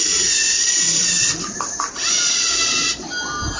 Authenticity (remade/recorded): recorded